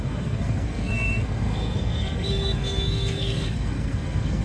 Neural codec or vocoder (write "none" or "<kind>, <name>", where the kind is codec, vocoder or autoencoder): codec, SNAC